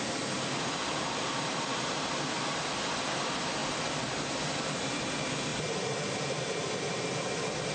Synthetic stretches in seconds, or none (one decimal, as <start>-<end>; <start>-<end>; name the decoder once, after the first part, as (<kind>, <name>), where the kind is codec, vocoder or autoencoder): 0.0-7.7 (vocoder, BigVGAN v2)